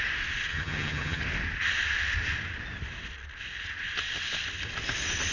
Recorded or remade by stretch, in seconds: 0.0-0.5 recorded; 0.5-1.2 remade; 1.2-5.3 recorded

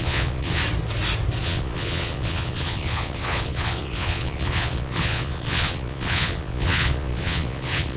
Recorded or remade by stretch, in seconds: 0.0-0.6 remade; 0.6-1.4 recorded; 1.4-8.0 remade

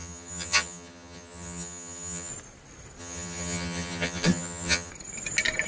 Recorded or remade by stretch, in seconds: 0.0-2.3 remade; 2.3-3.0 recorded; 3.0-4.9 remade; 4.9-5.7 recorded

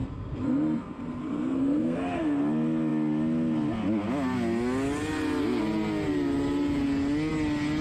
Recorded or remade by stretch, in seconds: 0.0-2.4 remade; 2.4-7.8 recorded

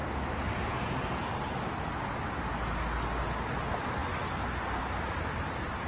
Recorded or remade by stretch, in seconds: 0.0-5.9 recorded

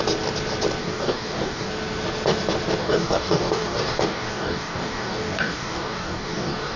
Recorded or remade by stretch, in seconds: 0.0-0.8 recorded; 0.8-1.7 remade; 1.7-2.8 recorded; 2.8-6.8 remade

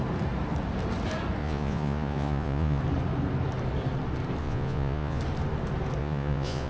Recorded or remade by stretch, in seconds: 0.0-1.4 recorded; 1.4-2.8 remade; 2.8-4.4 recorded; 4.4-5.2 remade; 5.2-6.0 recorded; 6.0-6.7 remade